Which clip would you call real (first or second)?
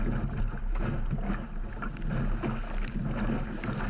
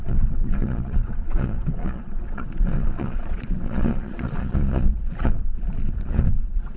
first